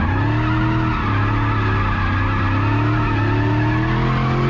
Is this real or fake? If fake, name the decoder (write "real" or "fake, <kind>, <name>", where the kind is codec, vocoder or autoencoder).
real